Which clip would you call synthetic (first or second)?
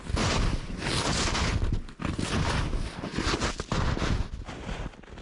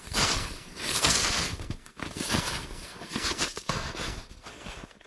second